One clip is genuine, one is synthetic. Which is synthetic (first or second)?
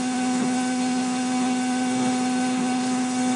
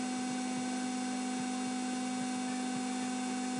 first